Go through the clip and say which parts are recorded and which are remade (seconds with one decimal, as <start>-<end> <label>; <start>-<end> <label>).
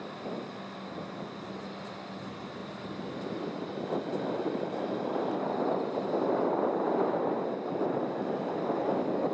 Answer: 0.0-9.3 recorded